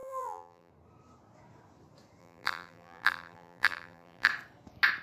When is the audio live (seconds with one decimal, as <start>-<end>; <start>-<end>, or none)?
0.7-2.2; 4.3-5.0